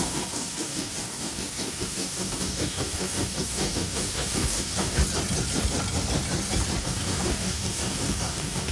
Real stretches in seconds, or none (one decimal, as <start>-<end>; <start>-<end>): 5.0-6.8